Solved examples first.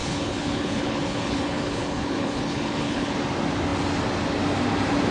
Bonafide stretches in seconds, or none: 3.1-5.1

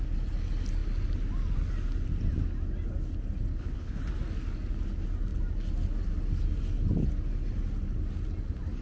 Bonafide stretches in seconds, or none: 0.0-3.5; 4.0-8.8

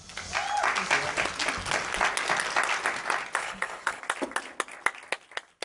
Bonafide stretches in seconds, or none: 0.0-3.4; 4.0-5.6

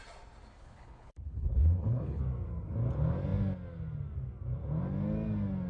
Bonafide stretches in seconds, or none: 0.0-0.5; 2.2-5.7